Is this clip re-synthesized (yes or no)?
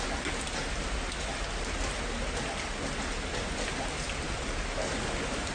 no